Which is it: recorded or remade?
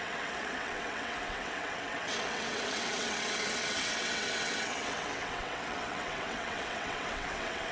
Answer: remade